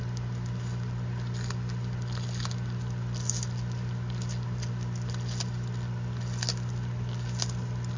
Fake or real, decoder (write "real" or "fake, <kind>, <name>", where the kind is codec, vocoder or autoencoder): real